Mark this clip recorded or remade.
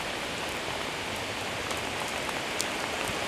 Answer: remade